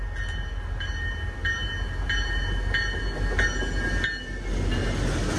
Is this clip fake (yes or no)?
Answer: no